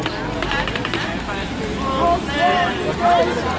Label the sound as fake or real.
real